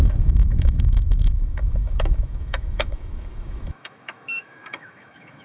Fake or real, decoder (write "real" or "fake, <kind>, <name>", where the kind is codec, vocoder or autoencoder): fake, autoencoder, DAC-VAE